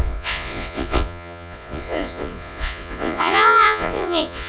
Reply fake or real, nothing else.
fake